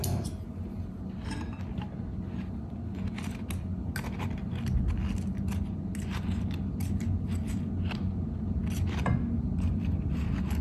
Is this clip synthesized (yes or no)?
no